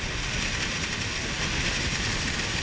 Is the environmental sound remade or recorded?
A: recorded